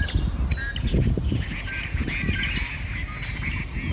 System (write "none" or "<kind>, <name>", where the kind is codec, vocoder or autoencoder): none